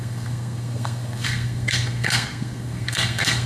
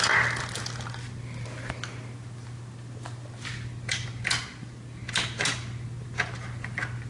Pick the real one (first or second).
second